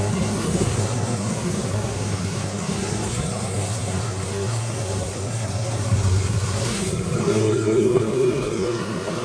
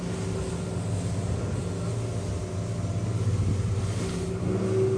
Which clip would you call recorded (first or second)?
second